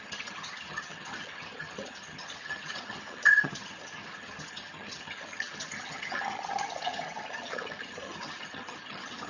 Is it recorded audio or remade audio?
remade